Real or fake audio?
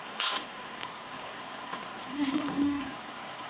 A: fake